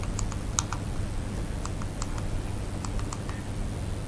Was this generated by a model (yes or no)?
no